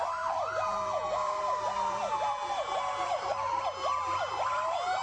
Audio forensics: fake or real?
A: fake